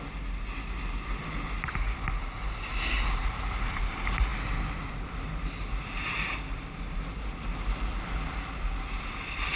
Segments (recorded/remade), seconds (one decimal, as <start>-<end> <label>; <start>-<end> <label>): 0.0-9.6 recorded